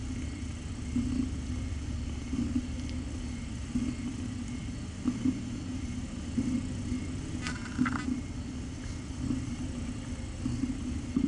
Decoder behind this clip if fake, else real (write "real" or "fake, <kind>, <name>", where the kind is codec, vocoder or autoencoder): real